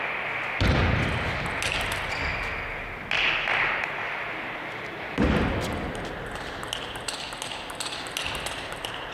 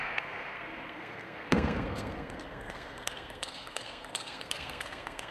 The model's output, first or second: second